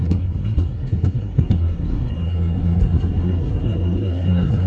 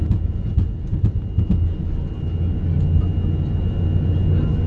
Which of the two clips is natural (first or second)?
second